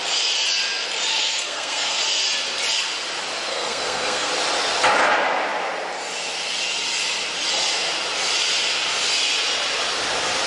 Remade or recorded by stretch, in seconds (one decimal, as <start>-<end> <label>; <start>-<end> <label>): 0.0-1.1 recorded; 1.1-2.0 remade; 2.0-3.5 recorded; 3.5-4.3 remade; 4.3-10.5 recorded